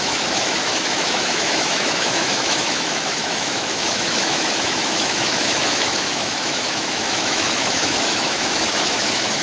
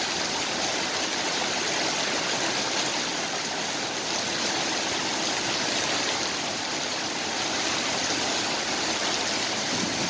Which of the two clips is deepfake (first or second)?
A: first